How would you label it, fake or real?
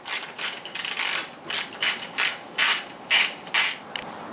real